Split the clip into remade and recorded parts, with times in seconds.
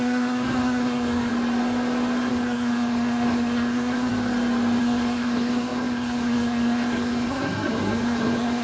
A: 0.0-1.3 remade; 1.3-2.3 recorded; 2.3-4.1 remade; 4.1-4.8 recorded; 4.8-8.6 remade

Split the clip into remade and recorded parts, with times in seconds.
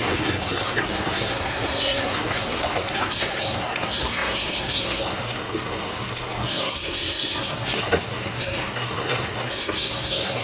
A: 0.0-10.4 remade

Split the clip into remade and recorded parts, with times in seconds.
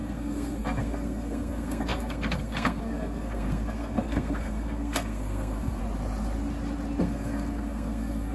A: 0.0-5.8 remade; 5.8-7.0 recorded; 7.0-8.3 remade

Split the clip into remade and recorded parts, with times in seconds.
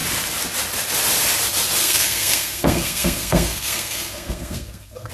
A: 0.0-1.8 recorded; 1.8-5.1 remade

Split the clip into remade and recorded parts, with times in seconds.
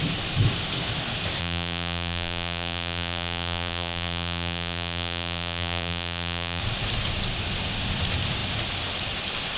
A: 0.0-1.4 recorded; 1.4-6.6 remade; 6.6-9.6 recorded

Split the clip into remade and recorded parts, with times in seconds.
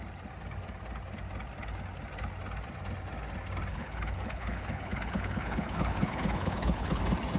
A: 0.0-3.7 recorded; 3.7-7.0 remade; 7.0-7.4 recorded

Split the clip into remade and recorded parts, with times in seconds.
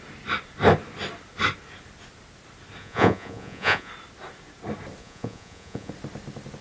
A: 0.0-2.8 recorded; 2.8-3.9 remade; 3.9-5.0 recorded; 5.0-5.9 remade; 5.9-6.6 recorded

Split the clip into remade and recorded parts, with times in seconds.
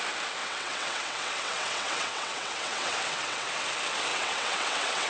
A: 0.0-0.4 recorded; 0.4-3.5 remade; 3.5-4.1 recorded; 4.1-5.1 remade